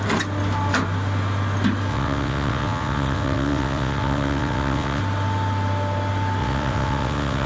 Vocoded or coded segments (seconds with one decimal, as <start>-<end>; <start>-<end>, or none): 1.9-5.0; 6.4-7.5